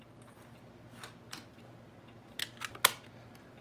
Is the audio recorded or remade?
recorded